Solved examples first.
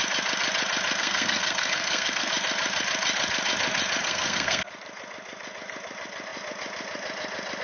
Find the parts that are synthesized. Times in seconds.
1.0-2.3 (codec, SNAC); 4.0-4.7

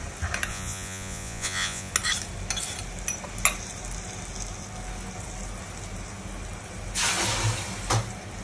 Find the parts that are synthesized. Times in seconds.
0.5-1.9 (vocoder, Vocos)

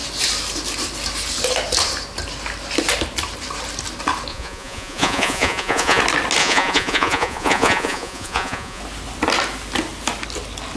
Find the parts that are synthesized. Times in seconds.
4.3-6.0 (vocoder, Vocos); 6.4-8.8